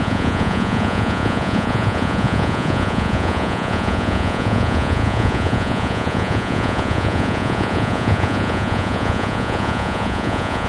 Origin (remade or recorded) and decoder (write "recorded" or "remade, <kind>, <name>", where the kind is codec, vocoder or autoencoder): remade, vocoder, Vocos